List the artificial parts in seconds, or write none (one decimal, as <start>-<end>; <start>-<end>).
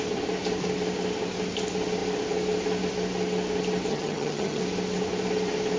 3.9-4.6